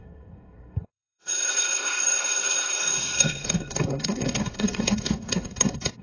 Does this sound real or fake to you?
fake